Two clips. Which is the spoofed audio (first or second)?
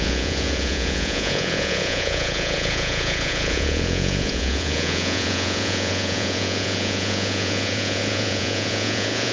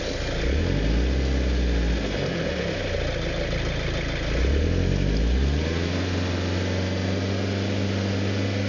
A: first